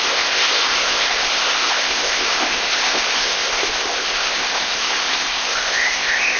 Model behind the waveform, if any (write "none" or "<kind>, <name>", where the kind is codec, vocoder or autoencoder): codec, ZipCodec